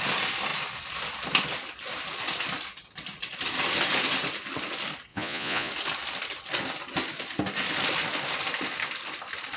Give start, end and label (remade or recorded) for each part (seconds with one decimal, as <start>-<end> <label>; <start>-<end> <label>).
0.0-5.1 recorded; 5.1-5.7 remade; 5.7-9.6 recorded